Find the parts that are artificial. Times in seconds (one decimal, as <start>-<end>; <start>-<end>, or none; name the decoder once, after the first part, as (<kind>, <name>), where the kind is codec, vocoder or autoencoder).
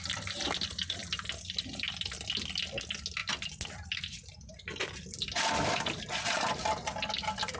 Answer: none